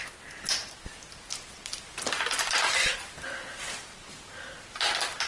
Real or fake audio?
real